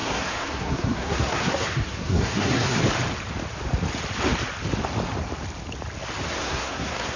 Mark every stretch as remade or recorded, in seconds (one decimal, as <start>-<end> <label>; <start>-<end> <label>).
0.0-2.8 remade; 2.8-6.4 recorded; 6.4-7.2 remade